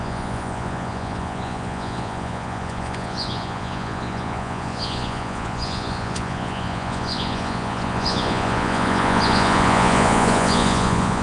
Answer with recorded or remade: remade